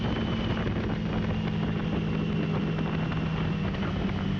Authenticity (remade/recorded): recorded